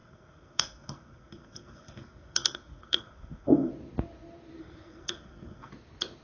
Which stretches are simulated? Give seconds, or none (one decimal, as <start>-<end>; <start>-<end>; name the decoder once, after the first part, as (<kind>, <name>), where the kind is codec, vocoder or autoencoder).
0.0-3.7 (codec, SNAC); 4.6-5.7